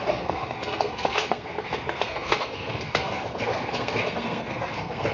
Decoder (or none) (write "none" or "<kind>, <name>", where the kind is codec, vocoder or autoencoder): codec, SNAC